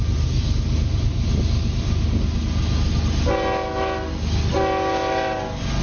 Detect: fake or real real